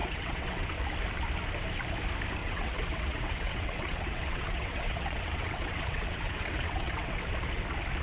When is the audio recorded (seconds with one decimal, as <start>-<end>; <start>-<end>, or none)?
0.8-2.4; 7.2-8.0